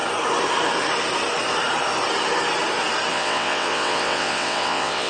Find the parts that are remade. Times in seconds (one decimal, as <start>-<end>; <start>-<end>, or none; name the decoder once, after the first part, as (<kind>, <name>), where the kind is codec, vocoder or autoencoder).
3.1-5.1 (vocoder, WaveNeXt)